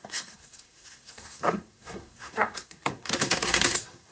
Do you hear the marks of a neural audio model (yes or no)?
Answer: yes